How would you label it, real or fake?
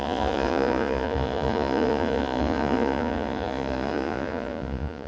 fake